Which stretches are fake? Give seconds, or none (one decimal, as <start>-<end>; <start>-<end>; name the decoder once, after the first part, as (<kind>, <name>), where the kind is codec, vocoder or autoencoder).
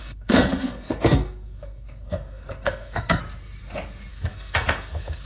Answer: 0.0-3.2 (codec, SNAC); 4.1-5.3